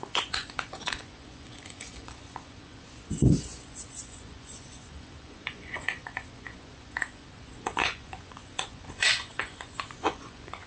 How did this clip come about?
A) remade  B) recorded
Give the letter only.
A